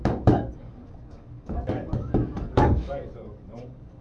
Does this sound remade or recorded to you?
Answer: remade